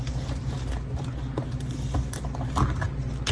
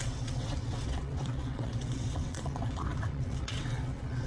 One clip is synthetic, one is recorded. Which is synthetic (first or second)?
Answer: second